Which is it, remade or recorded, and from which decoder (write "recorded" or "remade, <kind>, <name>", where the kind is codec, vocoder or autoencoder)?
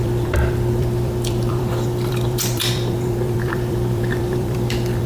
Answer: remade, vocoder, BigVGAN v2